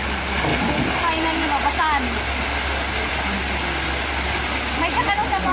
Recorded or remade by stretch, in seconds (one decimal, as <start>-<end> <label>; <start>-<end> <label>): 0.0-5.5 recorded